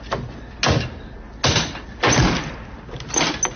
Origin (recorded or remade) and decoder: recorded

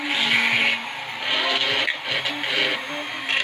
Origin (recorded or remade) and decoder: recorded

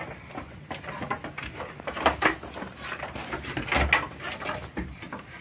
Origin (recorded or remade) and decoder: recorded